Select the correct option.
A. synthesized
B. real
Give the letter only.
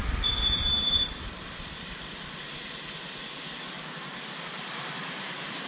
A